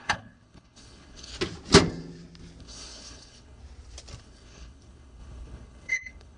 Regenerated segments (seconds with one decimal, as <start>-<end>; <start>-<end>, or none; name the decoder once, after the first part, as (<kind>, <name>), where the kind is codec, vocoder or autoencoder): 0.0-1.3 (codec, HILCodec); 2.6-3.6; 4.2-6.4